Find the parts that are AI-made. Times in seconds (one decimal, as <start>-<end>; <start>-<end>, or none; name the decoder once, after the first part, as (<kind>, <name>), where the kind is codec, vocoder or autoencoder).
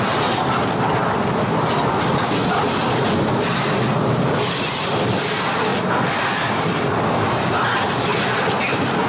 1.0-1.6 (vocoder, BigVGAN v2)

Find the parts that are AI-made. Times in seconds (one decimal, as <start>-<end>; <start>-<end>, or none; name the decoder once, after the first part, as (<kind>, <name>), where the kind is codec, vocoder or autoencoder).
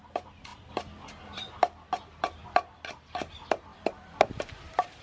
0.5-1.5 (vocoder, BigVGAN v2); 2.4-3.3; 3.7-4.4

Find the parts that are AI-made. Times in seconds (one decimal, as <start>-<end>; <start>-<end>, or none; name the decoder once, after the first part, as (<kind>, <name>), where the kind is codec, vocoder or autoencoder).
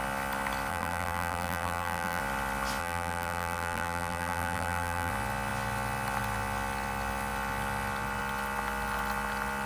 0.7-2.2 (vocoder, BigVGAN v2); 2.8-5.1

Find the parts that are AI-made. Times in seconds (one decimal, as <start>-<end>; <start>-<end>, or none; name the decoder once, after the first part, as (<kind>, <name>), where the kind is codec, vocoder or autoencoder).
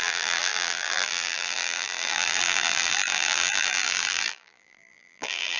0.0-5.6 (vocoder, BigVGAN v2)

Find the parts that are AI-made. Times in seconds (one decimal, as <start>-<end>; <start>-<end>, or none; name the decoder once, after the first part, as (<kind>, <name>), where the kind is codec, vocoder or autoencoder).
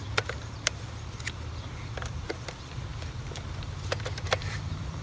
0.0-2.9 (vocoder, BigVGAN v2); 4.1-5.0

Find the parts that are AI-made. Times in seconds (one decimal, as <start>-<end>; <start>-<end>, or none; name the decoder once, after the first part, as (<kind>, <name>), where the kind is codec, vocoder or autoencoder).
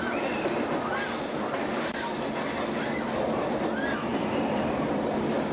4.1-5.1 (vocoder, BigVGAN v2)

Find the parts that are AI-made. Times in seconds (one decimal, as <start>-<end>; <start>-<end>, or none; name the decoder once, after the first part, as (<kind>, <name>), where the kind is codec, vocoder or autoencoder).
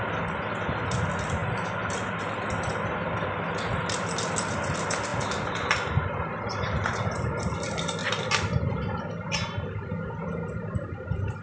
8.0-10.2 (vocoder, BigVGAN v2)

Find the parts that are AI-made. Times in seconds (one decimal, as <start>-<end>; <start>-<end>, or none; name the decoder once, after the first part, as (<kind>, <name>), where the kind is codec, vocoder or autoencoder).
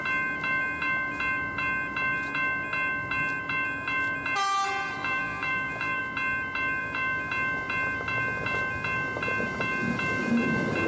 5.0-6.0 (vocoder, BigVGAN v2); 6.8-7.3